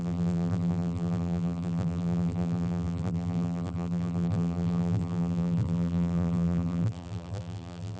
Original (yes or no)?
no